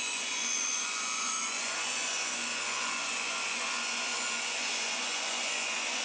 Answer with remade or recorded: remade